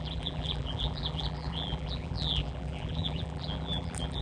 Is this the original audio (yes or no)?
no